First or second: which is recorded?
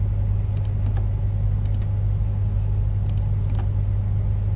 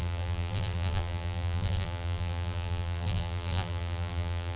first